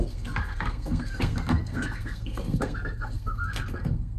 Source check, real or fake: fake